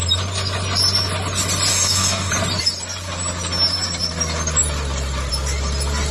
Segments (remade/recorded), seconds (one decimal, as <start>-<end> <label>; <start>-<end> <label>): 0.0-1.7 recorded; 1.7-2.3 remade; 2.3-6.1 recorded